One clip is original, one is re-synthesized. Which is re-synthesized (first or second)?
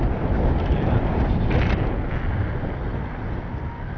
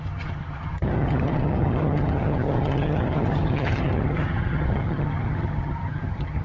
second